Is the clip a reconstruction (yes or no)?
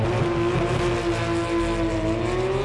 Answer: no